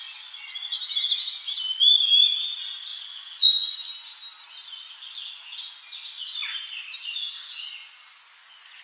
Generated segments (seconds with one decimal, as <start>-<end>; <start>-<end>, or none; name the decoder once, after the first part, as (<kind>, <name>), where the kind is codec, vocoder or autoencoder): 2.9-3.9 (vocoder, Vocos)